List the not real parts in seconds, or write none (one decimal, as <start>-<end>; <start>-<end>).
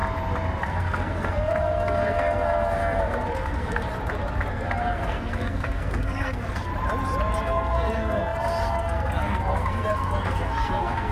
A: 0.6-3.9; 4.5-6.7; 7.4-11.1